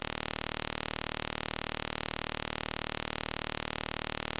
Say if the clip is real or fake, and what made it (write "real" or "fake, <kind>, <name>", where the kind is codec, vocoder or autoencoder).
real